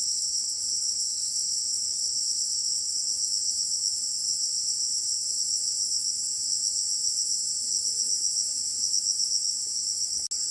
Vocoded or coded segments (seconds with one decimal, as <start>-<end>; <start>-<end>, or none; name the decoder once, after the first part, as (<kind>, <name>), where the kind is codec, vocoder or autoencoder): 0.0-2.9 (vocoder, WaveNeXt); 4.4-5.2